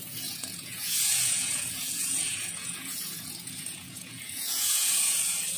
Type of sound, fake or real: fake